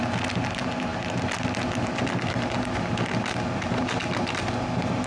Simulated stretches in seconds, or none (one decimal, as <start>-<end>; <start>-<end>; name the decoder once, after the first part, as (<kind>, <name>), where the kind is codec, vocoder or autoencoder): none